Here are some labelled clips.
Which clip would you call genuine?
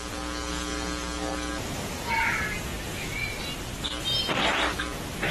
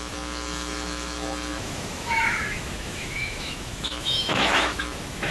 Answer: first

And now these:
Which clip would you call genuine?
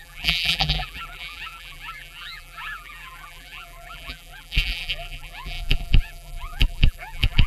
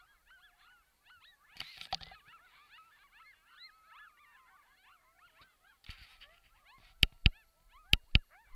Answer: second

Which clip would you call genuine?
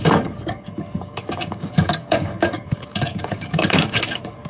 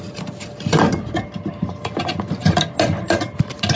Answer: second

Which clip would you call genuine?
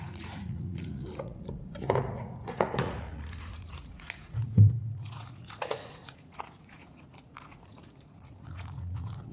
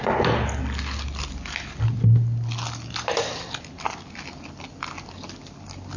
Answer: second